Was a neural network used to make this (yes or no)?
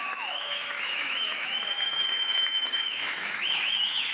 yes